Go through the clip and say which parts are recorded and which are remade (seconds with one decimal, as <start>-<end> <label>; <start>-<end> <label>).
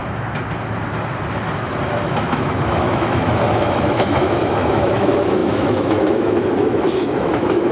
0.0-2.1 recorded; 2.1-7.7 remade